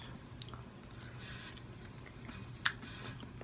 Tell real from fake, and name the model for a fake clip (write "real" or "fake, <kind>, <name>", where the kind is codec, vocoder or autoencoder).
real